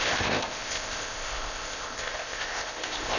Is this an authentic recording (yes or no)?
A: no